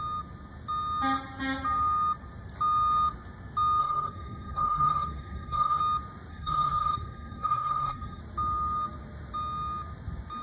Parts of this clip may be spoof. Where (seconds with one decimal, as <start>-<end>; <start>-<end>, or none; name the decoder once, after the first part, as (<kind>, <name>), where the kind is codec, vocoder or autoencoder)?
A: 3.8-5.8 (codec, SNAC); 6.3-8.2